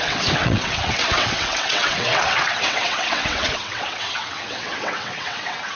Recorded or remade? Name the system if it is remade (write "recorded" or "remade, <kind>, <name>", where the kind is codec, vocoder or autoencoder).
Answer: remade, vocoder, WaveNeXt